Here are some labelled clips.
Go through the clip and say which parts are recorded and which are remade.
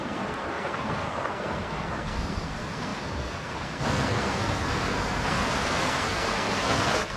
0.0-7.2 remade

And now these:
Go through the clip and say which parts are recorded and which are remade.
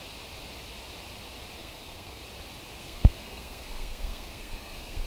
0.0-1.6 recorded; 1.6-2.2 remade; 2.2-2.8 recorded; 2.8-5.1 remade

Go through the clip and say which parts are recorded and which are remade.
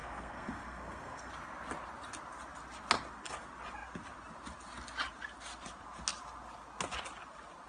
0.0-1.3 remade; 1.3-7.7 recorded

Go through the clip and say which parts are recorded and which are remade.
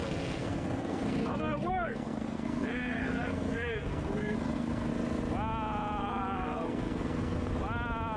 0.0-4.9 remade; 4.9-6.0 recorded; 6.0-7.5 remade; 7.5-8.2 recorded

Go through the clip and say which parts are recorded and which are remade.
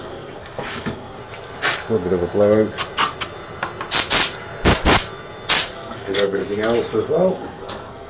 0.0-1.2 remade; 1.2-5.6 recorded; 5.6-6.4 remade; 6.4-7.3 recorded; 7.3-8.1 remade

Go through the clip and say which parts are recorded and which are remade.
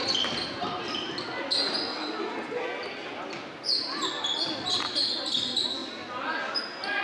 0.0-7.0 recorded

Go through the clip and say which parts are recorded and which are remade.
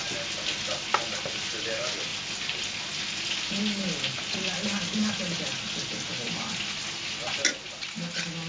0.0-8.5 recorded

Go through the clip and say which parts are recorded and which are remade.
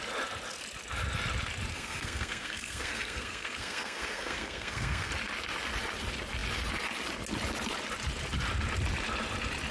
0.0-1.7 recorded; 1.7-5.1 remade; 5.1-9.7 recorded